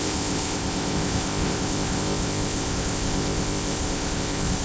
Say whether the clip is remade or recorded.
remade